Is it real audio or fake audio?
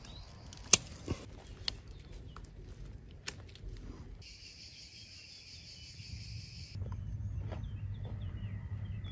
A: real